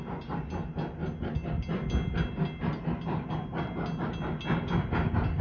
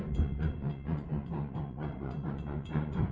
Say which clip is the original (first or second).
first